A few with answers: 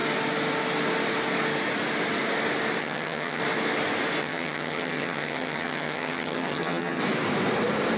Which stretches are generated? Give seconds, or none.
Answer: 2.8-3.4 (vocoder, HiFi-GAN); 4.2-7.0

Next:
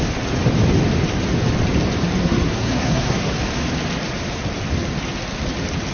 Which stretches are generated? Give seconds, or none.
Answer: 2.2-3.4 (codec, SNAC)

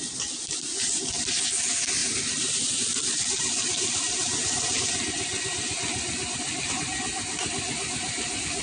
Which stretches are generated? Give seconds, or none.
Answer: none

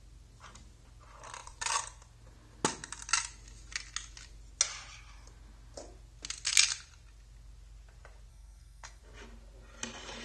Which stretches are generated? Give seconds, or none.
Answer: 8.3-9.0 (codec, SNAC)

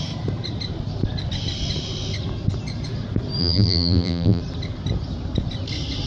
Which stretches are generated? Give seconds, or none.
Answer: 3.4-4.4 (vocoder, BigVGAN v2)

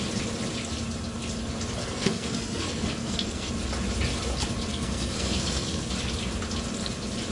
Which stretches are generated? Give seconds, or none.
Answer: 1.8-3.5 (codec, SNAC); 4.7-5.9

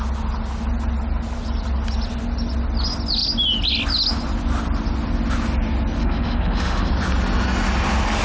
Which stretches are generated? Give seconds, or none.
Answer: 6.0-6.9 (autoencoder, DAC-VAE)

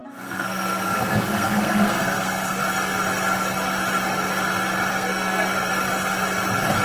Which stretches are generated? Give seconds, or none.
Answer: 0.0-2.6 (codec, SNAC); 4.9-5.7